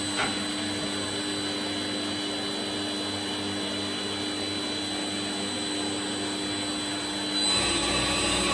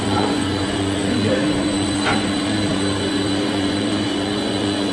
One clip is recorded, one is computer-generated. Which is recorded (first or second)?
first